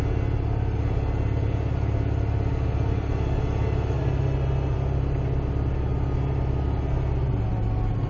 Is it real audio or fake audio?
real